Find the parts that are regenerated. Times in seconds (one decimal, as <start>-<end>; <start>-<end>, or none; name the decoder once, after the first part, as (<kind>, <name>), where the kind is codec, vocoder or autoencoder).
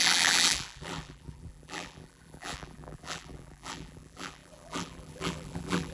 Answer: 0.0-5.9 (vocoder, BigVGAN v2)